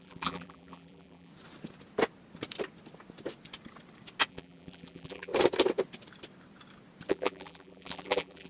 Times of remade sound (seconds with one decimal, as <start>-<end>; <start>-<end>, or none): 0.0-1.3; 4.3-5.3; 7.1-8.5